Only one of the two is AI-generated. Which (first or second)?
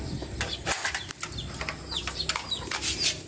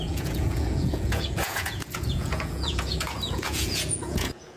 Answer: second